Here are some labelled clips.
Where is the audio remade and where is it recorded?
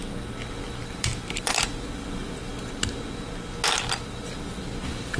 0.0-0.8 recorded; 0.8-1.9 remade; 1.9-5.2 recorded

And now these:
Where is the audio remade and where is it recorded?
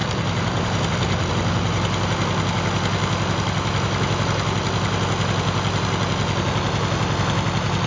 0.0-1.3 remade; 1.3-7.9 recorded